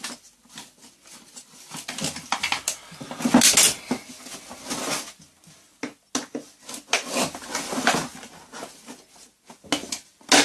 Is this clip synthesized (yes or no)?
no